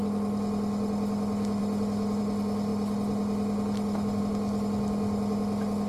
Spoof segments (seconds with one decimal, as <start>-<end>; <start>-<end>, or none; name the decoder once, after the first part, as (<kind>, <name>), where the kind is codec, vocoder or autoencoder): none